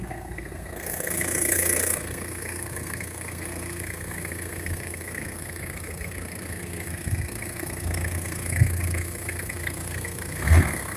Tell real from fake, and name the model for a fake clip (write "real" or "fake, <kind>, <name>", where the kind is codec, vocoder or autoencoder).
fake, codec, SNAC